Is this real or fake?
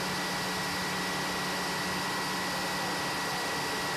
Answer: real